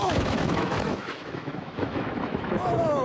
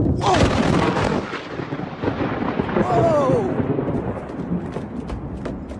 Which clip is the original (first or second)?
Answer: second